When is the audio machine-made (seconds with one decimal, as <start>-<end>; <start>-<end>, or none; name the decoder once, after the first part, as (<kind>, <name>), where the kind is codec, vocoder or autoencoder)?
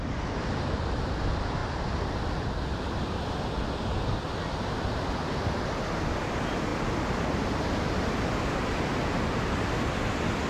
none